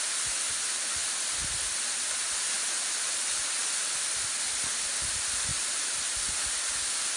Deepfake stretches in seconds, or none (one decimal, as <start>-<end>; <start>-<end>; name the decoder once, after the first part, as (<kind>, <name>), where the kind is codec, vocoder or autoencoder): none